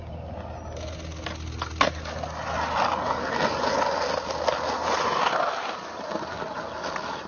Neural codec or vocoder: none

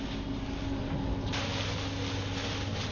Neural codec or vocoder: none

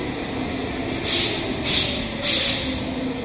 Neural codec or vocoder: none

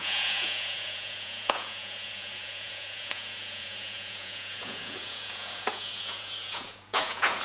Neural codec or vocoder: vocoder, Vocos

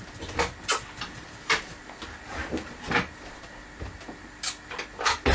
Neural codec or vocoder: none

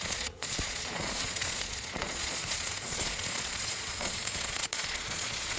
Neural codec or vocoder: vocoder, Vocos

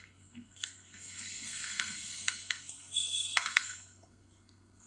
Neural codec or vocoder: codec, SNAC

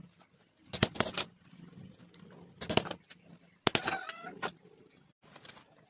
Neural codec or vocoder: none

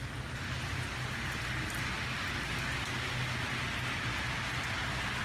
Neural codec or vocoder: none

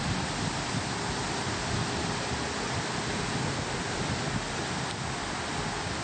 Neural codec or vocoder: none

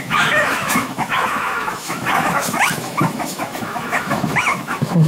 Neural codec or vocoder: autoencoder, DAC-VAE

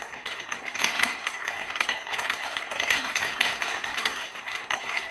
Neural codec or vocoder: codec, SNAC